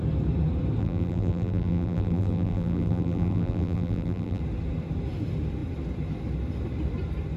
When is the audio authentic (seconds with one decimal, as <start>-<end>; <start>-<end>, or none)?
0.0-0.8; 4.4-7.4